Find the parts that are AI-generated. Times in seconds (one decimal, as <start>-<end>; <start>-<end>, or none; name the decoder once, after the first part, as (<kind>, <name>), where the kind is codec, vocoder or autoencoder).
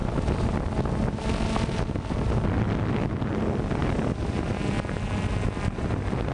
none